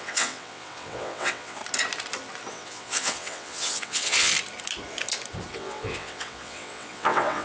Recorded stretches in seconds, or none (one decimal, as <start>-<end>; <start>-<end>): 1.6-2.5; 4.3-5.5